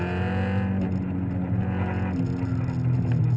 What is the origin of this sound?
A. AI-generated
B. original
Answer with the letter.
B